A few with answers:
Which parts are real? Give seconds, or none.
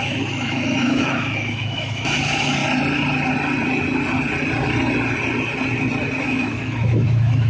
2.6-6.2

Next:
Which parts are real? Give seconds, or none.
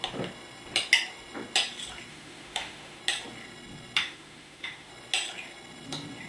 0.0-2.1; 3.0-4.0; 4.9-6.3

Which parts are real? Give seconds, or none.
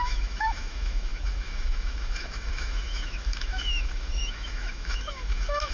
none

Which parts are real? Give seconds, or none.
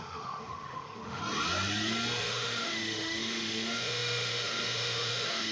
1.2-2.2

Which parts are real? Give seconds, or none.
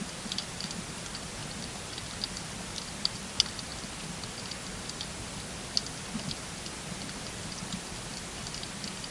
0.0-9.1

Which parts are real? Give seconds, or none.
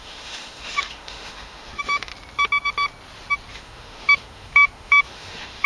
2.1-3.5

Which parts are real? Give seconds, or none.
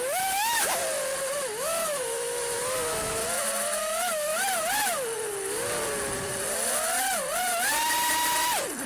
0.8-1.4; 3.2-3.8; 4.3-8.9